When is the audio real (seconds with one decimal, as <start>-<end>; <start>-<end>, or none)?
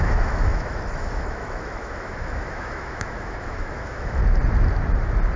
4.2-5.4